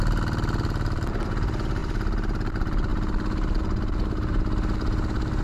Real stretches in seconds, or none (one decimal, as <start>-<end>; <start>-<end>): 0.0-5.4